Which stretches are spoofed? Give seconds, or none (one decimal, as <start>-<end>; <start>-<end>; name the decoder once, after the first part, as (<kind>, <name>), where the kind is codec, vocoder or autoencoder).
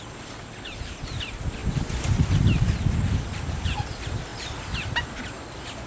none